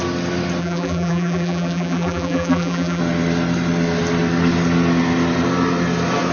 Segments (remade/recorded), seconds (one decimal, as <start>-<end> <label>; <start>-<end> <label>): 0.0-0.6 recorded; 0.6-3.0 remade; 3.0-6.3 recorded